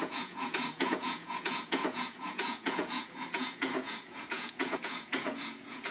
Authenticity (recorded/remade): remade